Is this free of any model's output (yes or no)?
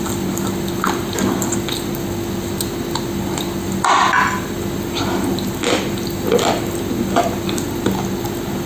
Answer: yes